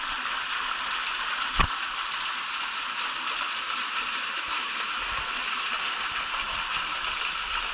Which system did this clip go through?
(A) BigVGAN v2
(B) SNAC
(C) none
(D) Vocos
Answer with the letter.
C